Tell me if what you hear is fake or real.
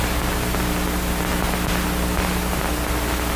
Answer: real